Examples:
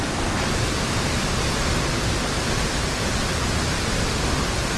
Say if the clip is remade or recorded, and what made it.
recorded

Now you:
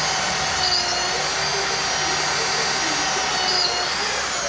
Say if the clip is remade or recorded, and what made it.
recorded